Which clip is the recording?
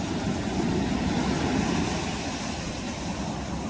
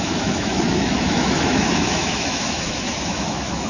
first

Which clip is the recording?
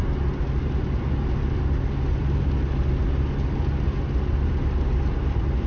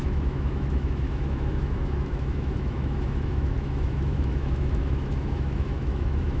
first